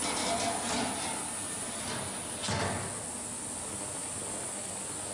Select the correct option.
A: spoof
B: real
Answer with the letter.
B